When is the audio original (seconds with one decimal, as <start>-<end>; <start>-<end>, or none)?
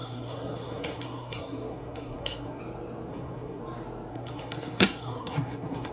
2.6-3.1; 3.6-4.1